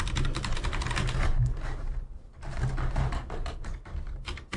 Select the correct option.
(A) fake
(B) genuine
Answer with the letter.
A